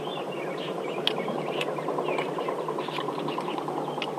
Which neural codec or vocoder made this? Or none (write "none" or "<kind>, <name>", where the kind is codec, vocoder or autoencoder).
none